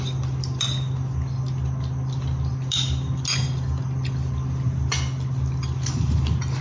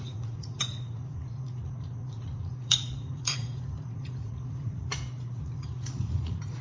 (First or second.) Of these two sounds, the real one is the first